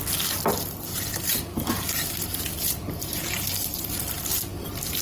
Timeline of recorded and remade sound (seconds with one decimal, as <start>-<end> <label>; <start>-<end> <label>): 0.0-0.9 recorded; 0.9-3.9 remade; 3.9-5.0 recorded